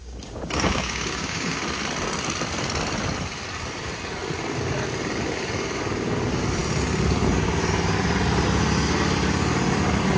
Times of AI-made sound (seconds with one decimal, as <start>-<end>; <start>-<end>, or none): 0.0-1.6